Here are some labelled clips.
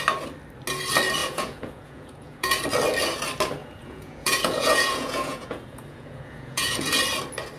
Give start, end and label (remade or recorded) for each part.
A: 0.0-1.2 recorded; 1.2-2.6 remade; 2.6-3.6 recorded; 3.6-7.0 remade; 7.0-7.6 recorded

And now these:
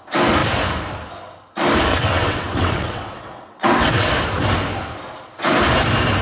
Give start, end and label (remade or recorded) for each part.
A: 0.0-1.9 recorded; 1.9-4.1 remade; 4.1-6.2 recorded

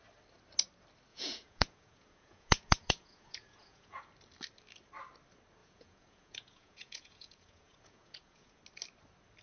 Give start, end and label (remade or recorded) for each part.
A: 0.0-1.1 recorded; 1.1-4.0 remade; 4.0-5.6 recorded; 5.6-8.6 remade; 8.6-9.4 recorded

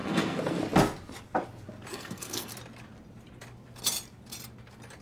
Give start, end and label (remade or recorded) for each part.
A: 0.0-0.6 remade; 0.6-1.9 recorded; 1.9-2.5 remade; 2.5-5.0 recorded

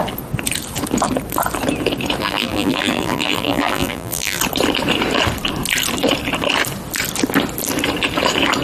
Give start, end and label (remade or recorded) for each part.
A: 0.0-2.2 recorded; 2.2-4.4 remade; 4.4-8.6 recorded